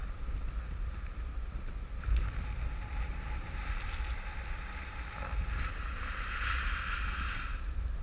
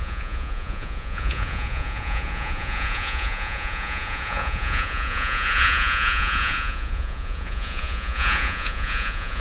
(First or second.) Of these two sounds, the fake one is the second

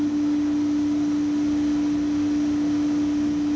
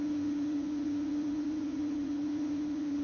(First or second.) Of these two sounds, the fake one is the second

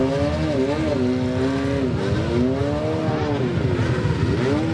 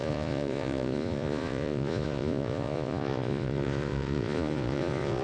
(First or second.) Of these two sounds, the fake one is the second